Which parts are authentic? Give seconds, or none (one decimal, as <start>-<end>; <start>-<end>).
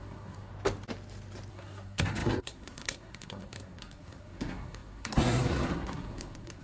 0.5-1.5